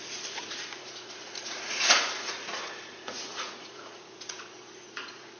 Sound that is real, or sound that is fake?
fake